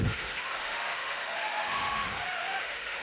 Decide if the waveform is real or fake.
fake